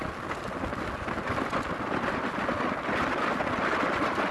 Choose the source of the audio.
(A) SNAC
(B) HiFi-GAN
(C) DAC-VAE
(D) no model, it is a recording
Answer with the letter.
D